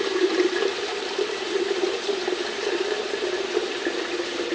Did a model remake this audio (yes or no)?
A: yes